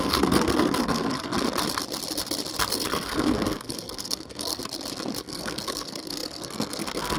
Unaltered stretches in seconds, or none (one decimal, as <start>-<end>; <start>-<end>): 1.3-2.6; 4.6-5.2